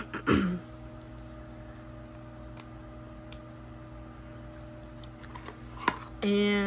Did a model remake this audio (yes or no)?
no